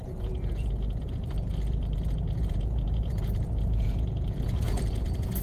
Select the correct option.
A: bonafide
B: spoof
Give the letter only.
B